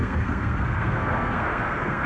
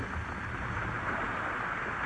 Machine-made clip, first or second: first